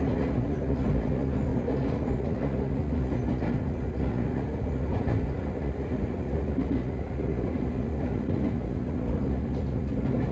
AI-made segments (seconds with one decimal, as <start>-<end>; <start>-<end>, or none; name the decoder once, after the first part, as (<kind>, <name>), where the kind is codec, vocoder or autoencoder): 0.0-10.3 (vocoder, Vocos)